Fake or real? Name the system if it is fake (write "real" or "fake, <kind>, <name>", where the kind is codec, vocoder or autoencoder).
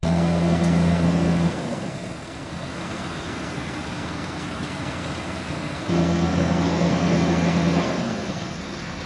fake, codec, SNAC